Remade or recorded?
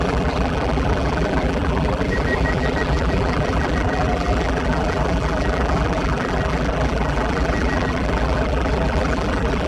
remade